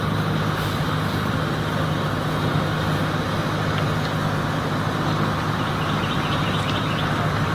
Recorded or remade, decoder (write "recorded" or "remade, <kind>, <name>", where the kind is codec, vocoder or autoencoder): recorded